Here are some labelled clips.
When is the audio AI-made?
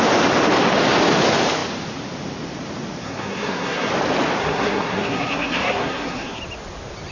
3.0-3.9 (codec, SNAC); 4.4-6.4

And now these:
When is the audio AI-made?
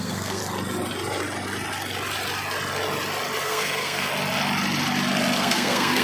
0.0-0.4 (codec, SNAC); 3.4-4.1; 5.4-6.0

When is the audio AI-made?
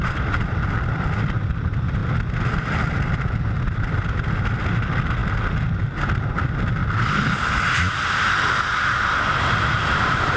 none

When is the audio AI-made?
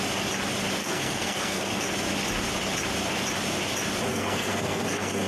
0.8-1.9 (codec, SNAC); 4.1-5.3